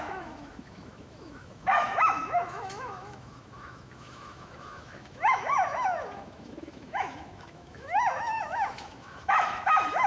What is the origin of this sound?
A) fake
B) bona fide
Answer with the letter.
A